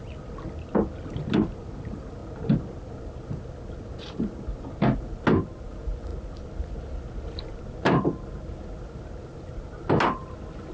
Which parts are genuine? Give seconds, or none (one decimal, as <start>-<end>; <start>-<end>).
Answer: 0.0-10.7